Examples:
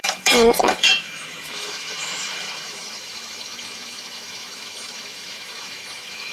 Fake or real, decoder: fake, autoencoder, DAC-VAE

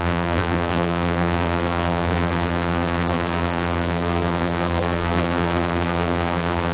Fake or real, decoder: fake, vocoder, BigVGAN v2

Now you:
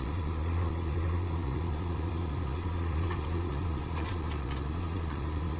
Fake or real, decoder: fake, vocoder, Vocos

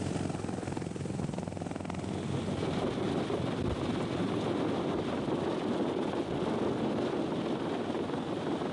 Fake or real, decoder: real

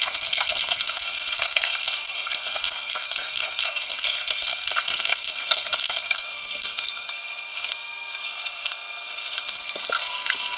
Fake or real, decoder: fake, codec, SNAC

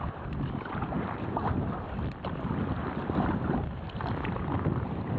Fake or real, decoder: real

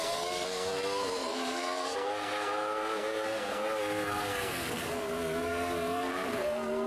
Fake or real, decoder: fake, codec, SNAC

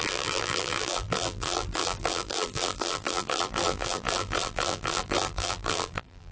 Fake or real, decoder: fake, vocoder, BigVGAN v2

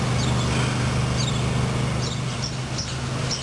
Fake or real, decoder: real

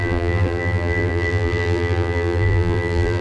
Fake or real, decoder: fake, vocoder, BigVGAN v2